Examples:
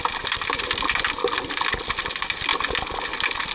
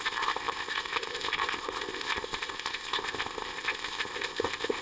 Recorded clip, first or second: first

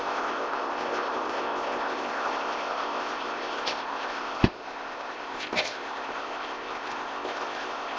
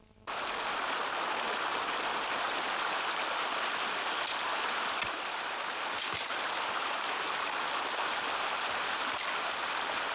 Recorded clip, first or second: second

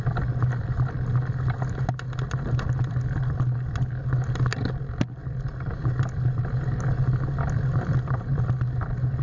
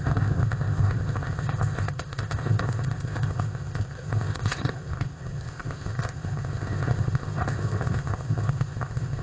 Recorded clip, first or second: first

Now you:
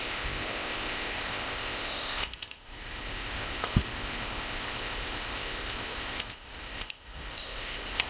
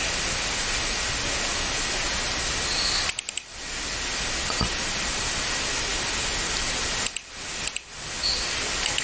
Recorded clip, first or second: second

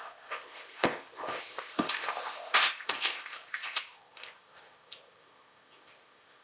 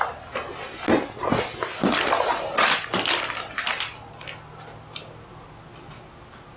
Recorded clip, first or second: second